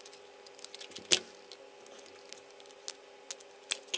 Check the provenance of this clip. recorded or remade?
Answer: recorded